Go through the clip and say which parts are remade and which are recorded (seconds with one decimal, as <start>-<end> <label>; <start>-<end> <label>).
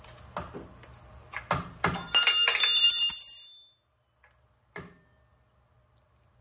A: 0.0-6.4 recorded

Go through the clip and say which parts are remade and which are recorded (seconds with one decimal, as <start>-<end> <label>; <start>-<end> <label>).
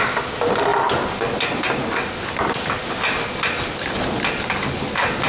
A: 0.0-5.3 recorded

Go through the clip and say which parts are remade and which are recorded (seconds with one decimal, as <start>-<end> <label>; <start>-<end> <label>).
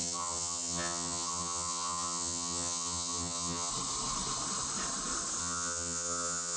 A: 0.0-3.7 remade; 3.7-5.4 recorded; 5.4-6.6 remade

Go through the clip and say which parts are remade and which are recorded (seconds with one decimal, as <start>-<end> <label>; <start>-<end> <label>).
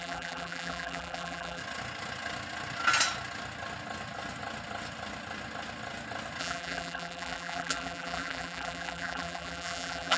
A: 0.0-1.6 remade; 1.6-6.4 recorded; 6.4-10.2 remade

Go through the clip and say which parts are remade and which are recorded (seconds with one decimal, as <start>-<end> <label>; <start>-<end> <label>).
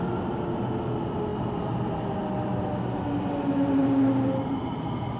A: 0.0-5.2 recorded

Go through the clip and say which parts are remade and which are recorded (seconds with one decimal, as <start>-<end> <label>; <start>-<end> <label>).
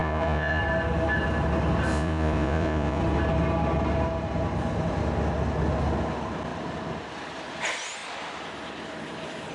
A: 0.0-0.6 remade; 0.6-1.9 recorded; 1.9-3.0 remade; 3.0-9.5 recorded